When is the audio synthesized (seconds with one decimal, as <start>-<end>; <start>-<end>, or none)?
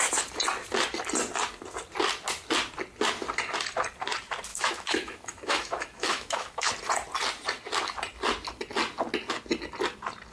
4.5-6.7